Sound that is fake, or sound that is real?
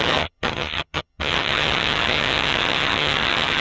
fake